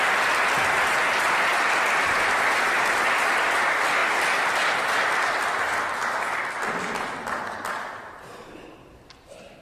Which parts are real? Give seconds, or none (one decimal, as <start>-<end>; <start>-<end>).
0.0-9.6